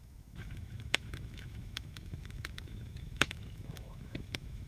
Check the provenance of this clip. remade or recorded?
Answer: remade